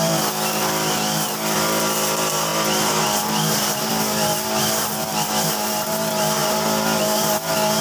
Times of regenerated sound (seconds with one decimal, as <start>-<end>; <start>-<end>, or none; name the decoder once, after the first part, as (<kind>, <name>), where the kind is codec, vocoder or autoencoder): none